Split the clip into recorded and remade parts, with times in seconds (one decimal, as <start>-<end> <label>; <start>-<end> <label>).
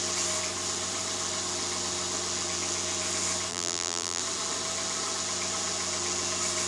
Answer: 0.0-3.5 recorded; 3.5-4.2 remade; 4.2-6.7 recorded